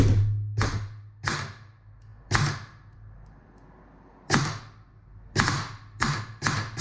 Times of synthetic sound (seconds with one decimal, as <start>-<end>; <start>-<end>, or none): none